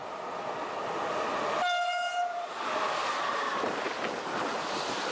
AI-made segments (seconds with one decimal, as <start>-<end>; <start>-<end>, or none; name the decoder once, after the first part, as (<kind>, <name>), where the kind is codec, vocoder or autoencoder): 2.2-5.1 (vocoder, BigVGAN v2)